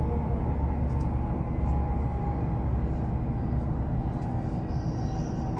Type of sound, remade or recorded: recorded